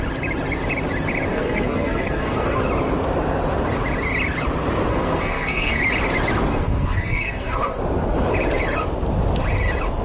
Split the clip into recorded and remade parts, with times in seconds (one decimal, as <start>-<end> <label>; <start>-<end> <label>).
0.0-1.3 recorded; 1.3-2.6 remade; 2.6-4.9 recorded; 4.9-5.8 remade; 5.8-6.5 recorded; 6.5-7.8 remade; 7.8-10.0 recorded